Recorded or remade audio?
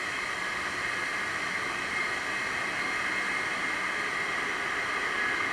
recorded